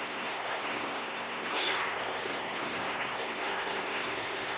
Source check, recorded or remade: remade